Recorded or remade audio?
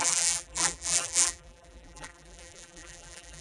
remade